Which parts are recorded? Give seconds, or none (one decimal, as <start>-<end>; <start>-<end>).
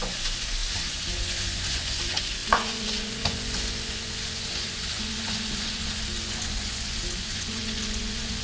none